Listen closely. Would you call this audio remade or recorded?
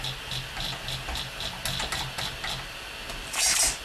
recorded